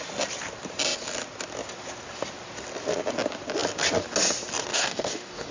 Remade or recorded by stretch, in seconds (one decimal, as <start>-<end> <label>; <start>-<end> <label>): 0.0-4.7 recorded; 4.7-5.5 remade